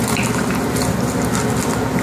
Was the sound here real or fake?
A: real